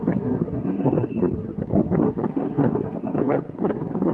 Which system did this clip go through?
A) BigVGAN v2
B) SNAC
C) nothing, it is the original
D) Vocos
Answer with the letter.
B